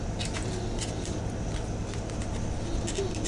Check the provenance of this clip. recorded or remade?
recorded